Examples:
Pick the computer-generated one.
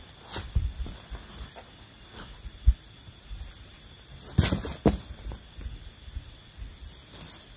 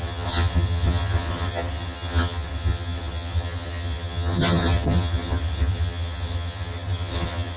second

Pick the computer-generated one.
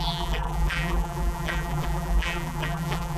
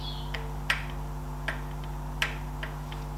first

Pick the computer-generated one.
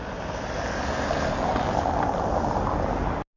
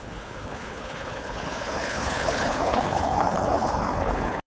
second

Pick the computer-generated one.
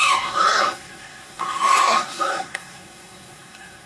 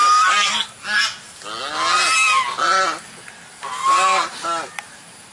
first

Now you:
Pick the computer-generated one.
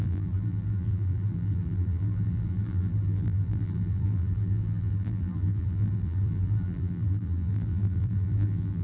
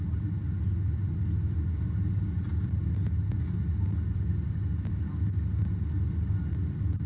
first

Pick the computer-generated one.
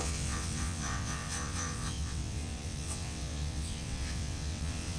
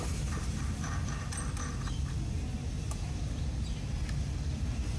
first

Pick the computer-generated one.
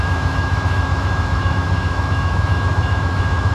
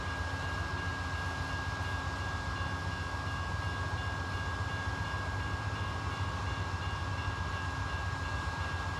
first